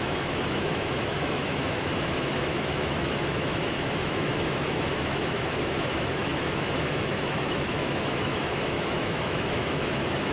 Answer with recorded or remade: remade